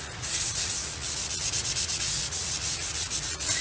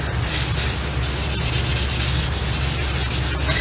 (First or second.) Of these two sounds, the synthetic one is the first